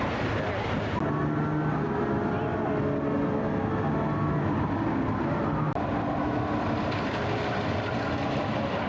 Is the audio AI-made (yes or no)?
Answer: no